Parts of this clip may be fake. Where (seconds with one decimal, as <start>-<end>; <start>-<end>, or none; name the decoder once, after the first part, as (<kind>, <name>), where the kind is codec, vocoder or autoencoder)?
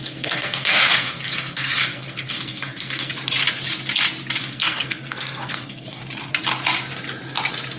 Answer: 0.0-3.1 (codec, SNAC); 4.4-6.0